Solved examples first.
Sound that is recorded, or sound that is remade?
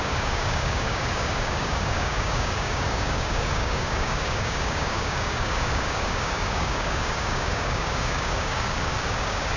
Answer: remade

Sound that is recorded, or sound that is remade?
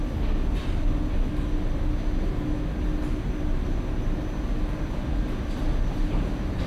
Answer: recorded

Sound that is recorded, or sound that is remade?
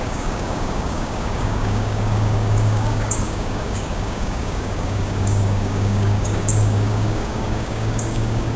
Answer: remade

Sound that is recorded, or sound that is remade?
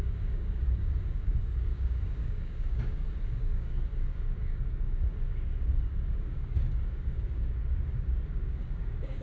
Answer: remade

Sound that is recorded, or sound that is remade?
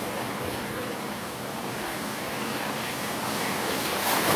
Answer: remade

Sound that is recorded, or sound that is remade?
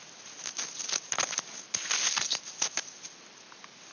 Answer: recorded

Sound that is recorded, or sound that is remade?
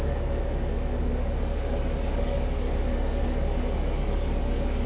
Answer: remade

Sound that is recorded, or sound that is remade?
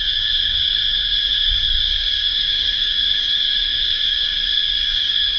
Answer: remade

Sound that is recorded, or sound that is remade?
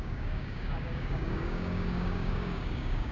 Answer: remade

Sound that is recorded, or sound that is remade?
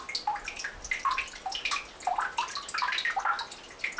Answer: recorded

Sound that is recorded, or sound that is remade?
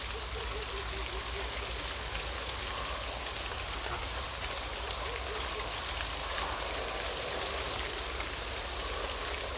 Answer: recorded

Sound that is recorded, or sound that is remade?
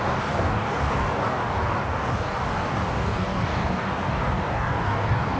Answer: remade